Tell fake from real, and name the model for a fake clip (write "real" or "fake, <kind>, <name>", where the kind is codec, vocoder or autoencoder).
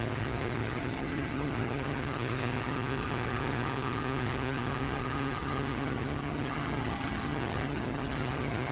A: fake, vocoder, HiFi-GAN